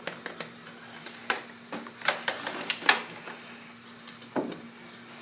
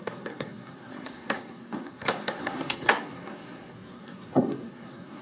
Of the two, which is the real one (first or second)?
first